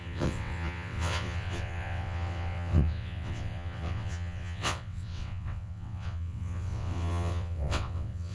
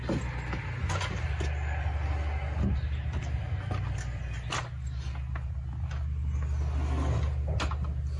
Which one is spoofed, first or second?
first